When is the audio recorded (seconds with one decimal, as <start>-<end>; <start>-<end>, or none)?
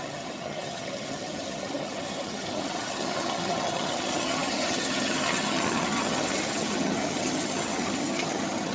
none